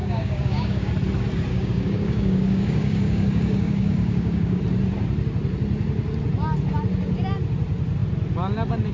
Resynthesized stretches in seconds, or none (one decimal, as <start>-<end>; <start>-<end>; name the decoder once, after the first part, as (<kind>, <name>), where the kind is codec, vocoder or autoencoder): 0.0-0.9 (codec, DAC); 1.5-4.6